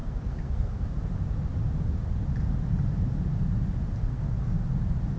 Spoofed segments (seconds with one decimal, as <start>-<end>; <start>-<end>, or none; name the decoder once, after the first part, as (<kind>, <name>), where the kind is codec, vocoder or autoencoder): 0.0-0.9 (codec, SNAC); 4.0-4.6